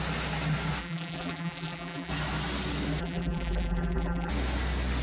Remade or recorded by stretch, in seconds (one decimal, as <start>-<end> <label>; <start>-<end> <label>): 0.0-0.8 recorded; 0.8-2.1 remade; 2.1-3.0 recorded; 3.0-4.3 remade; 4.3-5.0 recorded